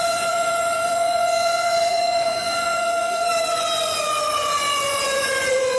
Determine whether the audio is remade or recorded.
remade